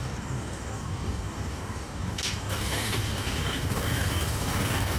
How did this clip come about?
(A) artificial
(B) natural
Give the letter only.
A